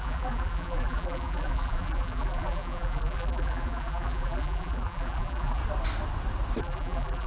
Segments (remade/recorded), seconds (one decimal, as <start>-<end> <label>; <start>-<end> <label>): 0.0-5.6 remade; 5.6-6.6 recorded; 6.6-7.3 remade